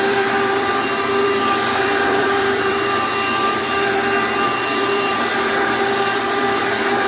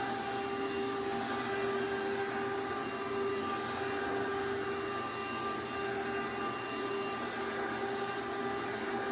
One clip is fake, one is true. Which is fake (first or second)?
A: first